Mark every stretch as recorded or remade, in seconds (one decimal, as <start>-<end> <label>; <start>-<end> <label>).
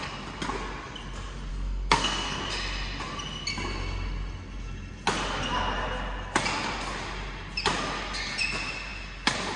0.0-1.5 recorded; 1.5-2.4 remade; 2.4-9.6 recorded